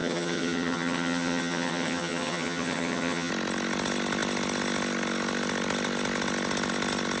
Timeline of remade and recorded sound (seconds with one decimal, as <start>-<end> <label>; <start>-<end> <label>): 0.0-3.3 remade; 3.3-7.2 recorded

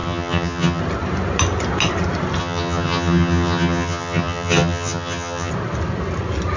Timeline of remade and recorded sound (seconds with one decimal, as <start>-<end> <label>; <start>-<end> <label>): 0.0-0.8 remade; 0.8-2.4 recorded; 2.4-5.5 remade; 5.5-6.6 recorded

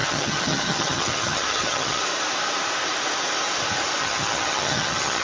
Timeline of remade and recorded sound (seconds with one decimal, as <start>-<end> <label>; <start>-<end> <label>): 0.0-2.0 remade; 2.0-4.0 recorded; 4.0-5.2 remade

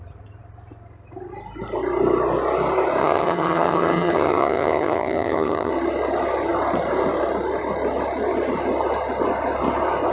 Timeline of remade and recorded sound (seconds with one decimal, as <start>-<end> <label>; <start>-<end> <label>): 0.0-3.0 recorded; 3.0-5.7 remade; 5.7-10.1 recorded

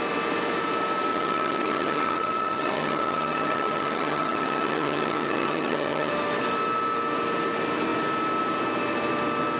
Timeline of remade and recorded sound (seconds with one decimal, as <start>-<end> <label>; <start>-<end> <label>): 0.0-1.1 recorded; 1.1-6.1 remade; 6.1-9.6 recorded

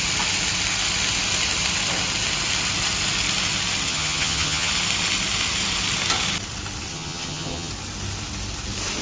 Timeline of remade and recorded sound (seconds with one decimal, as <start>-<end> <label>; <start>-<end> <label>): 0.0-3.9 recorded; 3.9-4.7 remade; 4.7-6.9 recorded; 6.9-7.7 remade; 7.7-9.0 recorded

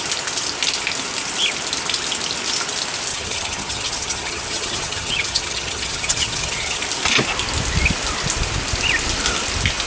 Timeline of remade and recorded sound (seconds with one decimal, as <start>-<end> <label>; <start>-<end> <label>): 0.0-3.1 recorded; 3.1-6.8 remade; 6.8-9.9 recorded